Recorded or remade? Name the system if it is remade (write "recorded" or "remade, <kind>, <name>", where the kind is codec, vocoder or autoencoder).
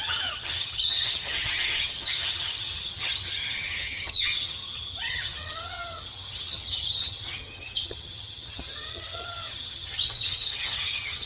remade, vocoder, HiFi-GAN